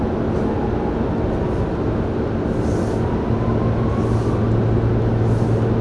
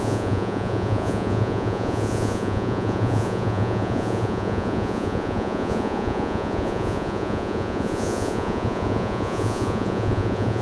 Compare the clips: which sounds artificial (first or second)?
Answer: second